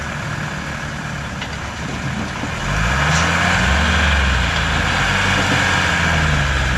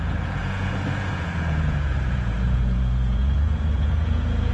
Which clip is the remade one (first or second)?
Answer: second